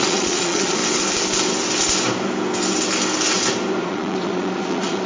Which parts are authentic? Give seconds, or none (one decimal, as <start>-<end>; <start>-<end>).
0.8-3.8